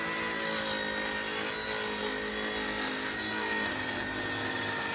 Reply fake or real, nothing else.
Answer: real